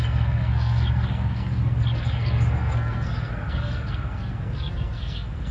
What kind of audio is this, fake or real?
fake